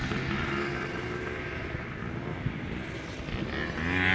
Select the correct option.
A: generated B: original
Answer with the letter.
B